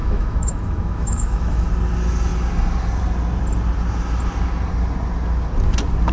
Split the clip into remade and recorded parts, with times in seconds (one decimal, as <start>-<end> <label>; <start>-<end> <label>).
0.0-1.7 remade; 1.7-6.1 recorded